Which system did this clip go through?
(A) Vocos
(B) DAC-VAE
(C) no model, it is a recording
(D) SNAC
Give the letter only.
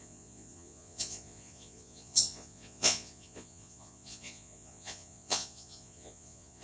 A